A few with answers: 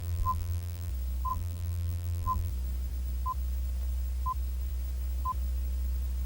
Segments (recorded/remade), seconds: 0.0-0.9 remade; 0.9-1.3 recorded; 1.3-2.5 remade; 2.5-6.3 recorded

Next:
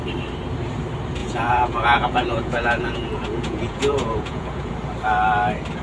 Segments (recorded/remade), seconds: 0.0-1.2 recorded; 1.2-4.7 remade; 4.7-5.8 recorded

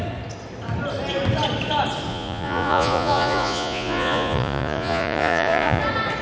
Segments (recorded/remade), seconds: 0.0-2.1 recorded; 2.1-5.8 remade; 5.8-6.2 recorded